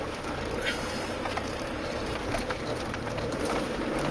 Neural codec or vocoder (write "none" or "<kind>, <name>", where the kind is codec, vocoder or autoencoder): vocoder, BigVGAN v2